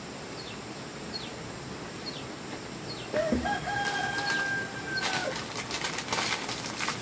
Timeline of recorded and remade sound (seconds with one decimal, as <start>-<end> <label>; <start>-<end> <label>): 0.0-7.0 recorded

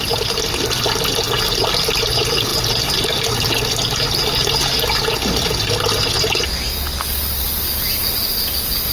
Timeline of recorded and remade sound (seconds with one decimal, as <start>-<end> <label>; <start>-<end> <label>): 0.0-8.9 recorded

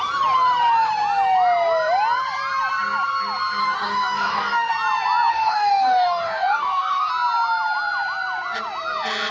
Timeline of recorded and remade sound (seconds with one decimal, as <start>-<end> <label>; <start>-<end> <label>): 0.0-3.6 recorded; 3.6-4.7 remade; 4.7-5.3 recorded; 5.3-7.1 remade; 7.1-9.3 recorded

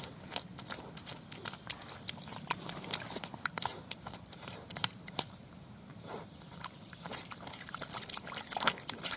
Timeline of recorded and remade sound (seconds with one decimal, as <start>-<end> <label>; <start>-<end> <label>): 0.0-3.7 recorded; 3.7-9.2 remade

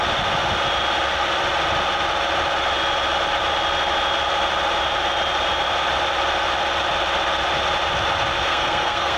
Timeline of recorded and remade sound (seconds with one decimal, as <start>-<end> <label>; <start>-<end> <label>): 0.0-8.4 recorded; 8.4-9.2 remade

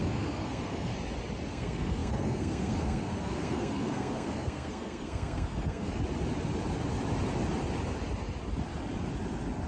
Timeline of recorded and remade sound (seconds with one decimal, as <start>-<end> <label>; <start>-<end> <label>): 0.0-0.9 remade; 0.9-1.5 recorded; 1.5-5.9 remade; 5.9-9.7 recorded

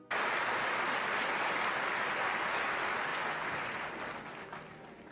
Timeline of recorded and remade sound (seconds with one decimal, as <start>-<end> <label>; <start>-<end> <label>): 0.0-3.1 recorded; 3.1-3.9 remade; 3.9-5.1 recorded